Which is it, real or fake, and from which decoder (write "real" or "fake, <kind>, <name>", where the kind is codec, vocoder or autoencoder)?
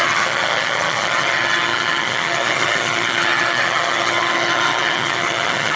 fake, vocoder, HiFi-GAN